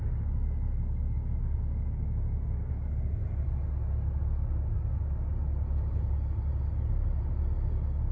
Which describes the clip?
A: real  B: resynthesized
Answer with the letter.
A